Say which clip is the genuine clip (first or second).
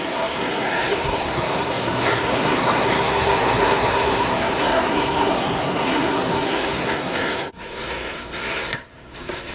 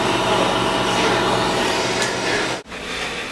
second